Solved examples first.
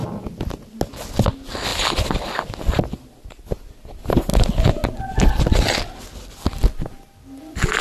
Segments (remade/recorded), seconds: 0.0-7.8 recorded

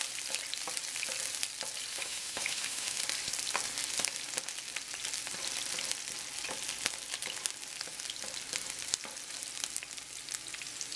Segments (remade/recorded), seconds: 0.0-1.9 recorded; 1.9-3.0 remade; 3.0-11.0 recorded

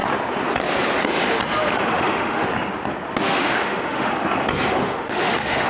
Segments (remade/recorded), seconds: 0.0-1.9 recorded; 1.9-2.5 remade; 2.5-3.2 recorded; 3.2-4.1 remade; 4.1-4.7 recorded; 4.7-5.7 remade

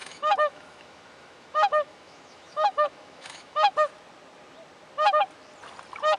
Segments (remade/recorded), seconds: 0.0-3.7 remade; 3.7-6.2 recorded

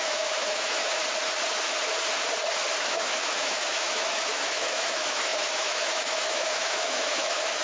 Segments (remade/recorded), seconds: 0.0-1.0 remade; 1.0-2.8 recorded; 2.8-7.6 remade

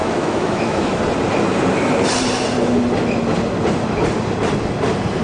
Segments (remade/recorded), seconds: 0.0-1.0 remade; 1.0-5.2 recorded

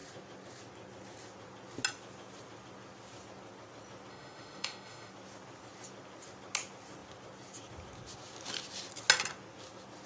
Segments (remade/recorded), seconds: 0.0-4.1 recorded; 4.1-5.1 remade; 5.1-10.1 recorded

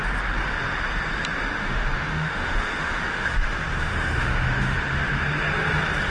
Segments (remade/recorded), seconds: 0.0-1.4 recorded; 1.4-5.1 remade; 5.1-6.1 recorded